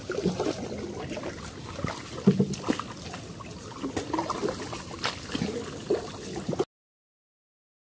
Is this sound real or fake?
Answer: real